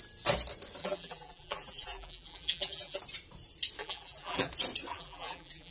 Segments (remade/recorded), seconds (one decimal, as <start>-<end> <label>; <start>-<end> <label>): 0.0-0.8 recorded; 0.8-3.0 remade; 3.0-3.8 recorded; 3.8-4.5 remade; 4.5-4.9 recorded; 4.9-5.7 remade